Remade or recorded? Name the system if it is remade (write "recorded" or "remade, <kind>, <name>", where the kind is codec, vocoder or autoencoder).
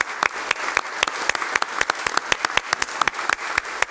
recorded